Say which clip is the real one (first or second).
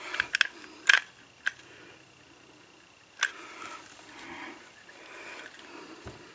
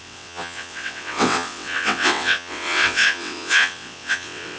first